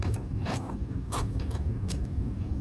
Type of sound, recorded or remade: remade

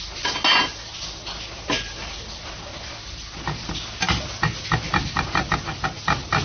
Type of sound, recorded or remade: recorded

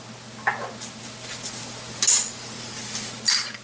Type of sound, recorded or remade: recorded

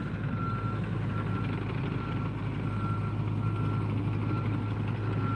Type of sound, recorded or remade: recorded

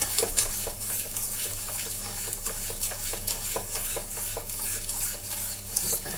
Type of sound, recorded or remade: remade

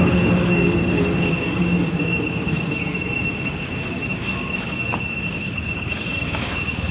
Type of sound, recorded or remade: remade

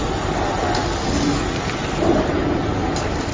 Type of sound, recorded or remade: recorded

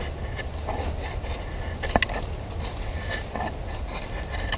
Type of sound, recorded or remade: recorded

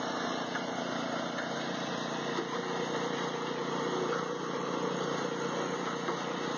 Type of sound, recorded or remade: recorded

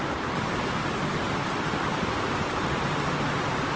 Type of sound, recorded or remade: recorded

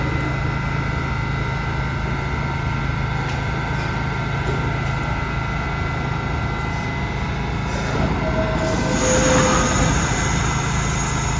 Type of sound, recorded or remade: recorded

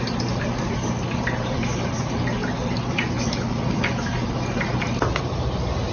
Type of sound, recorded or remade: recorded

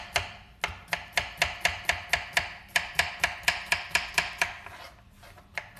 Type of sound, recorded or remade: recorded